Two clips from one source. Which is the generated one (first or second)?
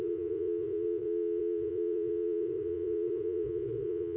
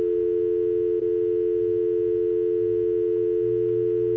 first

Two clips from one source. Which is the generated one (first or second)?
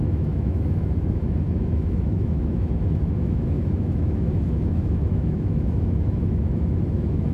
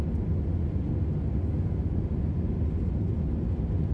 first